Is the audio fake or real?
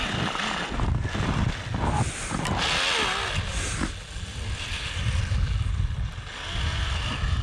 real